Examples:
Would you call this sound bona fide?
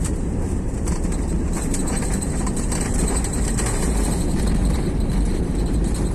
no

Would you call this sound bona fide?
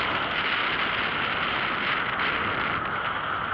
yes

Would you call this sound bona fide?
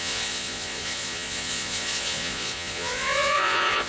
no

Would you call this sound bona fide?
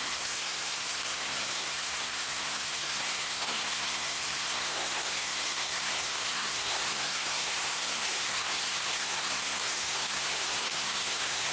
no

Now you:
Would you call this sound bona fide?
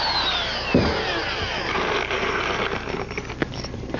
yes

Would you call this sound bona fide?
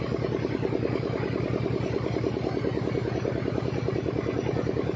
yes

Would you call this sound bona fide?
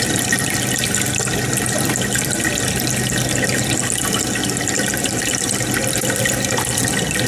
yes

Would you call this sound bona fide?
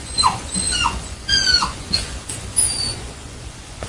no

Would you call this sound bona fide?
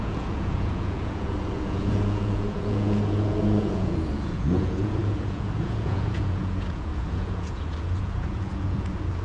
no